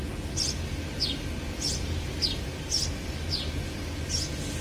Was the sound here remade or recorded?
recorded